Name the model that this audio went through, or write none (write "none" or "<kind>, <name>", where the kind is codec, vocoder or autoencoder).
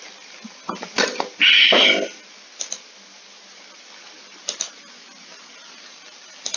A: none